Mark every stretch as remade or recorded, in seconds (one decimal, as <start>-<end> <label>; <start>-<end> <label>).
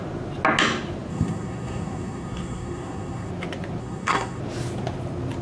0.0-1.1 recorded; 1.1-3.3 remade; 3.3-3.8 recorded; 3.8-4.4 remade; 4.4-5.4 recorded